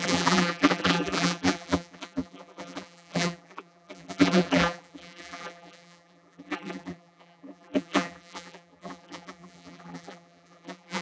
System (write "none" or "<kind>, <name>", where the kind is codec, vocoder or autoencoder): vocoder, BigVGAN v2